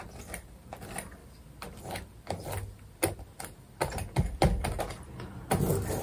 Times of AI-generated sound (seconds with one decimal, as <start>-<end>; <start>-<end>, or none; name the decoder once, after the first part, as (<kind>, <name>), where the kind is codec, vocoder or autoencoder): none